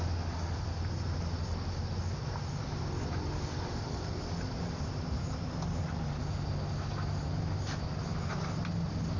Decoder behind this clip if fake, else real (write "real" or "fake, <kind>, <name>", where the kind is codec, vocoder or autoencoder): real